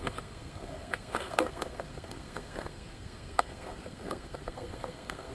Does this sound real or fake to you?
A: fake